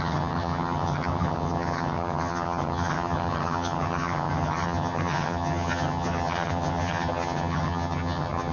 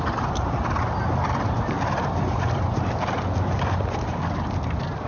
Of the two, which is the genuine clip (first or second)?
second